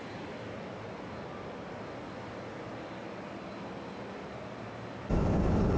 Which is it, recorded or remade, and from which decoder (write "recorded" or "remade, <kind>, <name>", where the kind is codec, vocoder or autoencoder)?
recorded